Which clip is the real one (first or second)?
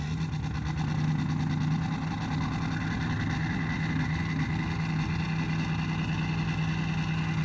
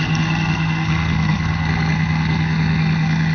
first